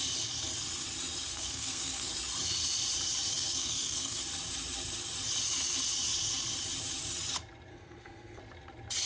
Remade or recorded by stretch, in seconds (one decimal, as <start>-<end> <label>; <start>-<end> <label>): 0.0-1.3 recorded; 1.3-2.1 remade; 2.1-3.3 recorded; 3.3-4.2 remade; 4.2-7.7 recorded; 7.7-8.4 remade; 8.4-9.1 recorded